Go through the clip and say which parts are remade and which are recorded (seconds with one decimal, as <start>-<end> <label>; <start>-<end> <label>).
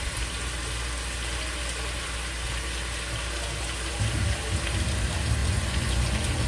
0.0-5.4 recorded; 5.4-6.5 remade